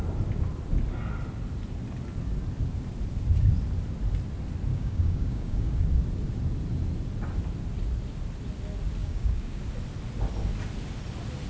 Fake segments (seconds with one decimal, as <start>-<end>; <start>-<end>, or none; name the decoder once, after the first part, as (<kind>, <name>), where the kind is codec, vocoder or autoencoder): 4.7-5.8 (codec, DAC); 9.0-9.6